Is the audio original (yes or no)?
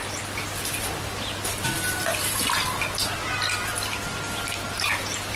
yes